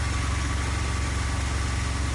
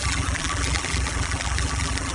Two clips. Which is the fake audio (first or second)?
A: second